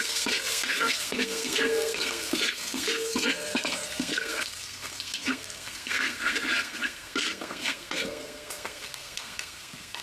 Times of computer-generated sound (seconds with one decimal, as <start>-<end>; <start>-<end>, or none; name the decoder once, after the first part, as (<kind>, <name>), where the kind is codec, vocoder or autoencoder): 0.0-10.0 (codec, SNAC)